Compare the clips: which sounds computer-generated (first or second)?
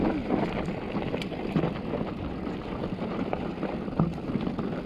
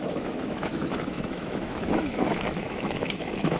second